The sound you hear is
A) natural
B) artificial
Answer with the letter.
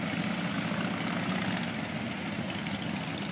A